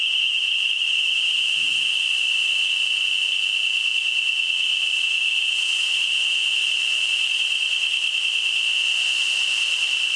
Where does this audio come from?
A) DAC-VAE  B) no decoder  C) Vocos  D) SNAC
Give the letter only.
B